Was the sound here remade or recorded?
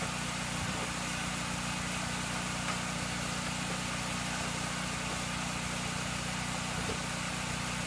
recorded